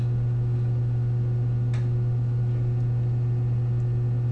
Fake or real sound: real